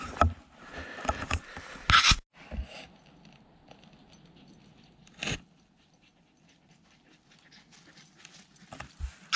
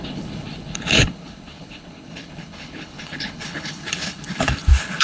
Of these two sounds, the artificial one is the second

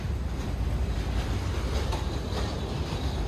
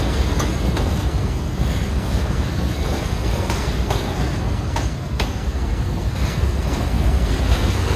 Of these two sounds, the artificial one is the second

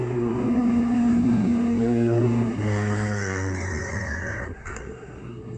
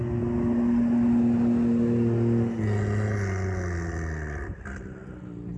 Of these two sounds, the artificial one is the first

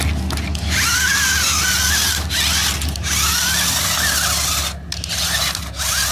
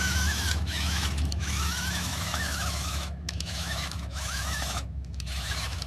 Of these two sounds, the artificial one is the second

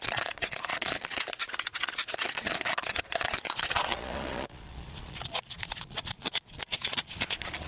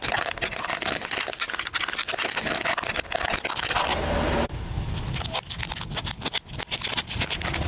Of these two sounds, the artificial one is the first